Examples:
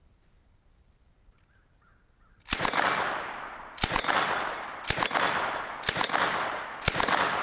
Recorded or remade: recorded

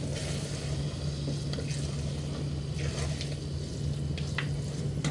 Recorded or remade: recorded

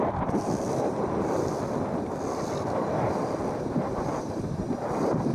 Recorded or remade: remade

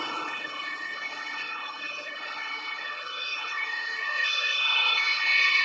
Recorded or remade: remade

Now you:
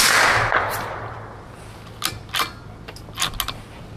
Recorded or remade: recorded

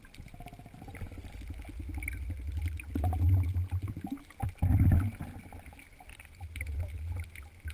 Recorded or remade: recorded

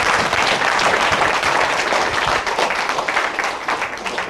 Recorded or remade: recorded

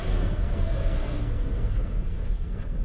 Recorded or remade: remade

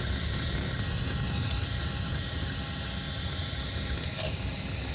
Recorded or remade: recorded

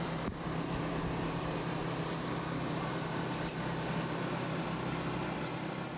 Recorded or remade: recorded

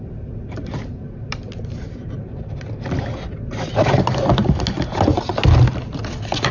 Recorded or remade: recorded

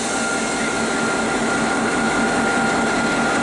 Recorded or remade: recorded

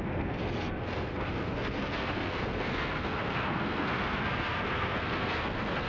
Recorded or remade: remade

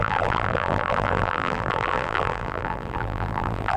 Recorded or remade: remade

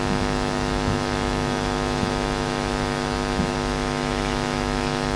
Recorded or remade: remade